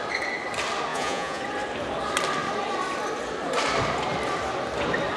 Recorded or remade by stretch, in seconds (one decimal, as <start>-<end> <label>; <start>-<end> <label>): 0.0-0.9 recorded; 0.9-1.4 remade; 1.4-5.2 recorded